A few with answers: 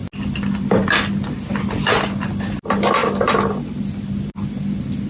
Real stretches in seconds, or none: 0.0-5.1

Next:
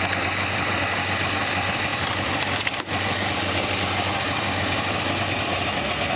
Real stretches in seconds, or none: 0.0-1.9; 3.5-6.2

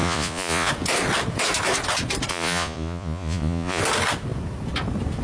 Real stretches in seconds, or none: 0.7-2.3; 3.8-5.2

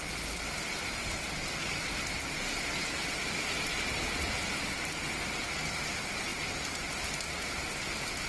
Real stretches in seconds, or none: 0.0-8.3

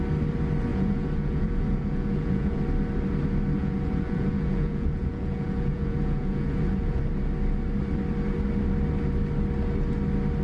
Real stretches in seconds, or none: 0.0-0.7; 2.6-3.6; 7.0-10.4

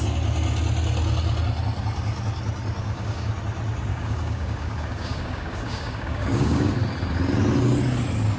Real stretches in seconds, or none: 0.0-2.8; 3.3-3.9; 6.7-8.4